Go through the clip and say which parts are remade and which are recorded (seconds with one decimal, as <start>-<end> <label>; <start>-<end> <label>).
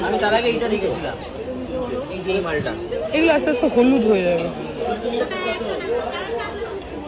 0.0-4.3 recorded; 4.3-5.2 remade; 5.2-7.1 recorded